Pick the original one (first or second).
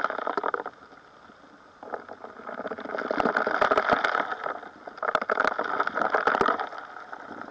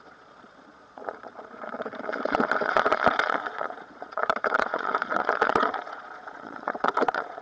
first